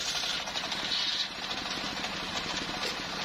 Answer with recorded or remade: recorded